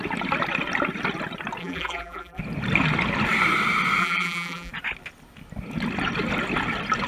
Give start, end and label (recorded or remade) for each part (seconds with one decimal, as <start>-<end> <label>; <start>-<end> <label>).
0.0-1.6 recorded; 1.6-2.4 remade; 2.4-4.0 recorded; 4.0-4.7 remade; 4.7-7.1 recorded